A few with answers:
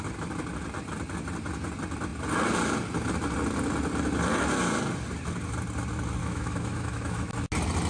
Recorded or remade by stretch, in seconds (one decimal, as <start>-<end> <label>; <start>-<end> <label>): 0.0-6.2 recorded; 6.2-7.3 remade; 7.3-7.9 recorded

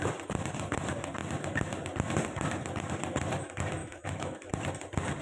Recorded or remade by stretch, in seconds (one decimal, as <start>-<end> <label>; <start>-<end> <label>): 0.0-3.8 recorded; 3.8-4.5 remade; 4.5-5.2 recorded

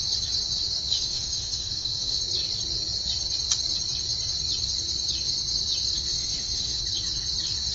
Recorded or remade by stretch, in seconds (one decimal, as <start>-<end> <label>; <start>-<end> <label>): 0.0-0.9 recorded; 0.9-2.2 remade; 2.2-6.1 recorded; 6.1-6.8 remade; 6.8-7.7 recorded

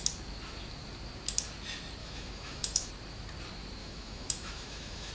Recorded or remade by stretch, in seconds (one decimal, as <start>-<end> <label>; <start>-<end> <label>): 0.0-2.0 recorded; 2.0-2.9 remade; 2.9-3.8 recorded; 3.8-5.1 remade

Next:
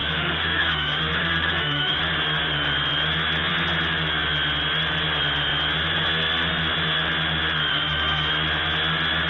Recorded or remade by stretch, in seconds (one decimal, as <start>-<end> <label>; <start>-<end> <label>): 0.0-2.0 remade; 2.0-7.7 recorded; 7.7-8.3 remade; 8.3-9.3 recorded

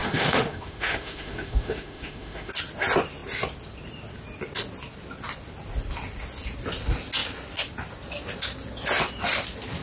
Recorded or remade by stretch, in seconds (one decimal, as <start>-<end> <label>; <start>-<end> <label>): 0.0-2.5 remade; 2.5-9.8 recorded